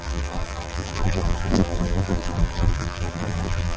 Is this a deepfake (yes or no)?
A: yes